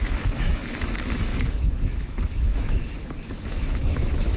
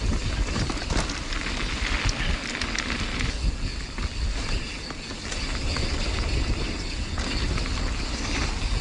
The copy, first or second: first